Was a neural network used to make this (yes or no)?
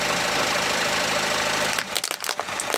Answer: no